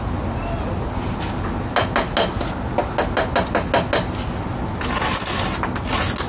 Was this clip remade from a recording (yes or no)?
no